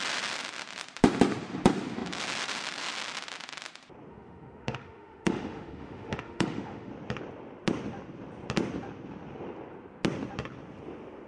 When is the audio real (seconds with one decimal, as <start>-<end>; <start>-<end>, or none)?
0.0-4.1; 6.9-11.3